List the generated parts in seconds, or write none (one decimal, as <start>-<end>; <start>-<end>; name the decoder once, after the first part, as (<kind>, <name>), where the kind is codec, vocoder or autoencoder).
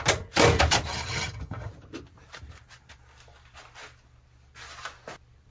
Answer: 0.9-1.7 (vocoder, HiFi-GAN)